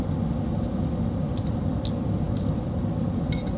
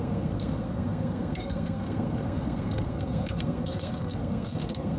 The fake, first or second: second